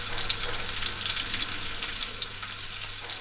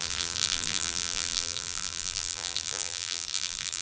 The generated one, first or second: second